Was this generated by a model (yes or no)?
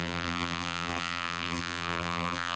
yes